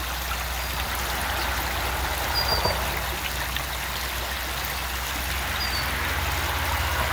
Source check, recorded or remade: recorded